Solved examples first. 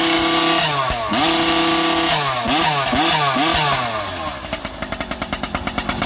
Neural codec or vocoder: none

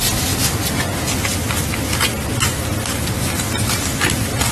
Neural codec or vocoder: none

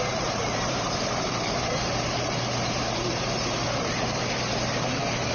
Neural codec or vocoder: vocoder, BigVGAN v2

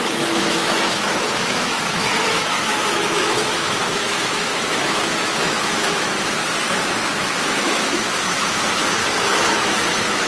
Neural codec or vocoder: autoencoder, DAC-VAE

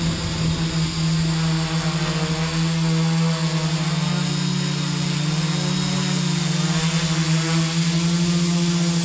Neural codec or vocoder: none